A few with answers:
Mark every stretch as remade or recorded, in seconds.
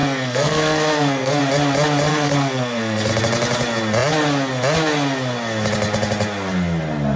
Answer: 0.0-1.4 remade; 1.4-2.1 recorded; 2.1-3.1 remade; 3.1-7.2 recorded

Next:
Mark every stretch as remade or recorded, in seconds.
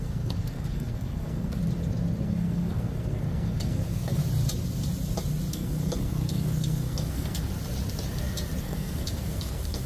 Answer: 0.0-1.6 remade; 1.6-2.2 recorded; 2.2-4.2 remade; 4.2-5.5 recorded; 5.5-7.5 remade; 7.5-8.6 recorded; 8.6-9.9 remade